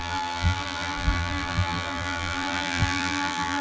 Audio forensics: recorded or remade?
remade